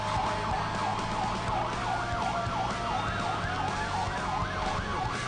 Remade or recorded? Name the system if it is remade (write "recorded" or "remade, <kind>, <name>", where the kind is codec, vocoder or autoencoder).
recorded